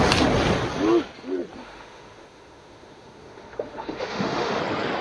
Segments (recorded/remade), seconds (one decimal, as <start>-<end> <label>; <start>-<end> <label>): 0.0-1.6 recorded; 1.6-4.6 remade; 4.6-5.0 recorded